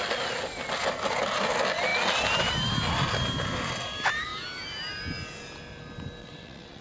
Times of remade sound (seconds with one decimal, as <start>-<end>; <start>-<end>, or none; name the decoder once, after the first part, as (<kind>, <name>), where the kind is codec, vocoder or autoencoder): 6.2-6.8 (vocoder, WaveNeXt)